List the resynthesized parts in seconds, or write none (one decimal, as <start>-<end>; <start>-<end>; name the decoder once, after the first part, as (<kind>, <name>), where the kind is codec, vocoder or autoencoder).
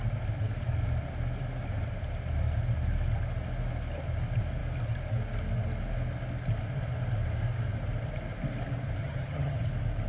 9.0-9.7 (vocoder, HiFi-GAN)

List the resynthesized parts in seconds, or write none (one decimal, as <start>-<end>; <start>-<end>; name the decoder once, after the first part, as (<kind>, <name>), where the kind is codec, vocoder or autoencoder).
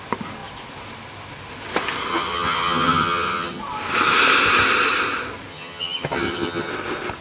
2.1-3.6 (vocoder, HiFi-GAN); 5.5-6.7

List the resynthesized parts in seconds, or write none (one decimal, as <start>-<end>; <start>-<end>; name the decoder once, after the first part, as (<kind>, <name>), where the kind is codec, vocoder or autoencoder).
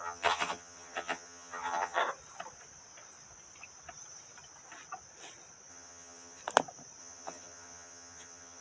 0.0-2.0 (vocoder, HiFi-GAN); 5.7-6.4; 7.0-8.6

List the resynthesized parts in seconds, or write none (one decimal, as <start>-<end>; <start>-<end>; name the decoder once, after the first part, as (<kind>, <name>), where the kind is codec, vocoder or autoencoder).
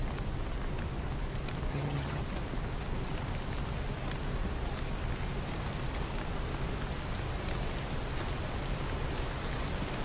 1.7-2.2 (vocoder, HiFi-GAN)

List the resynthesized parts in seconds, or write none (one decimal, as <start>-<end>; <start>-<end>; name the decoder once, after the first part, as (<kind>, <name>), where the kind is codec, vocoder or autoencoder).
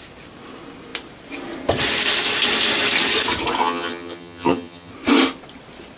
3.6-4.9 (vocoder, HiFi-GAN)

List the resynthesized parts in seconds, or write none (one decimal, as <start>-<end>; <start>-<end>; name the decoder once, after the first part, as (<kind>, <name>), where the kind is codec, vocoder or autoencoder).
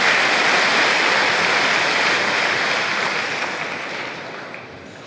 none